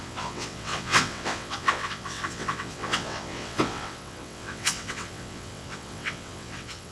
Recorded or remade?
remade